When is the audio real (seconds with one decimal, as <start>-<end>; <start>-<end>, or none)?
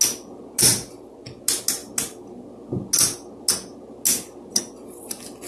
0.0-5.5